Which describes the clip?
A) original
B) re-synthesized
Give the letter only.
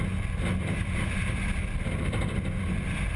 A